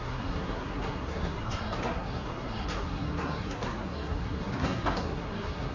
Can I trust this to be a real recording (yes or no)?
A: no